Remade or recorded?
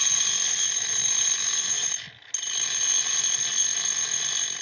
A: recorded